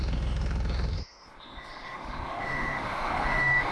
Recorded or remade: remade